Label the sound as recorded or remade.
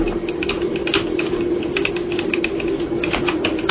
recorded